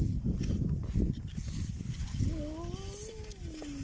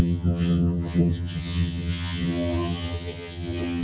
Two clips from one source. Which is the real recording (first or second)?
first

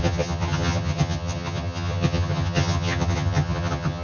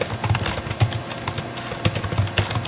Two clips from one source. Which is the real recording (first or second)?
second